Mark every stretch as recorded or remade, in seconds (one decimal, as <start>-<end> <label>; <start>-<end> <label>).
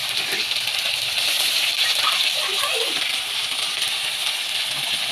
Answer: 0.0-5.1 recorded